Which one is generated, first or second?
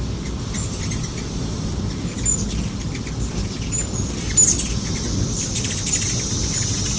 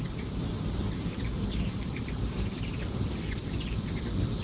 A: second